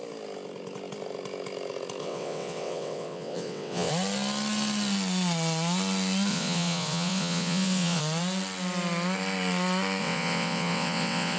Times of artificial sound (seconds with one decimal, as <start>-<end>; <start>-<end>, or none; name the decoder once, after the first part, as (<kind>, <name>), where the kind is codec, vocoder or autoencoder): 2.0-3.9 (vocoder, WaveNeXt); 6.3-8.0; 10.0-11.4